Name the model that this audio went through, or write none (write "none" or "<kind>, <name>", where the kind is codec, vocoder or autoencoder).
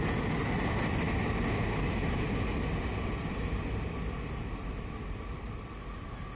none